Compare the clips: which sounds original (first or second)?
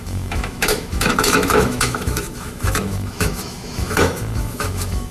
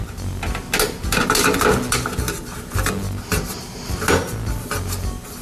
second